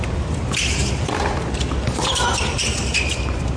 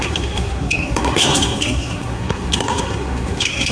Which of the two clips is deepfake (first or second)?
second